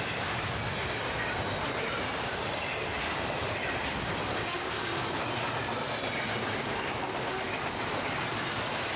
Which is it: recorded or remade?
recorded